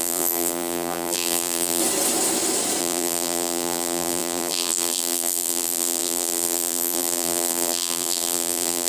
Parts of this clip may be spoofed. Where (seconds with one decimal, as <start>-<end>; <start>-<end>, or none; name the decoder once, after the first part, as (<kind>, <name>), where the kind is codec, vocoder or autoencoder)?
0.0-1.8 (vocoder, BigVGAN v2); 2.8-8.9